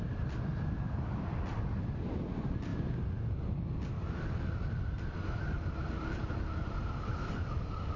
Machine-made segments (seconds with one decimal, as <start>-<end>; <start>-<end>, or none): none